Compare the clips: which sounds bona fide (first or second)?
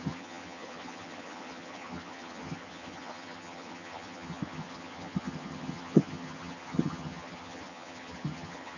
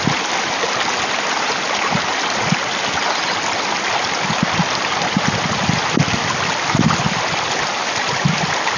second